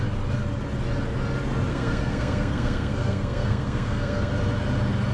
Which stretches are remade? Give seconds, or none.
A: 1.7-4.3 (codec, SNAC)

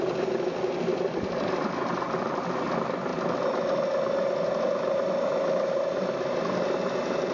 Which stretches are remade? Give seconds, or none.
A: 0.9-2.7 (vocoder, BigVGAN v2)

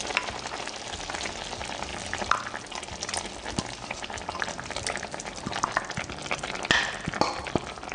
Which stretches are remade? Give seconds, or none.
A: none